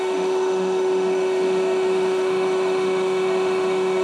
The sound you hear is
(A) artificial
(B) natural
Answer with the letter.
A